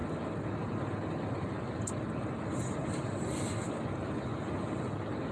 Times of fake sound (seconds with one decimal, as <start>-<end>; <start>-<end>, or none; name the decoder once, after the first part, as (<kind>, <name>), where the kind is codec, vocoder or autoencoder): none